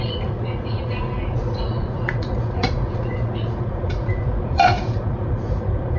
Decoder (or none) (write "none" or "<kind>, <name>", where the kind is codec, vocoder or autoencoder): vocoder, Vocos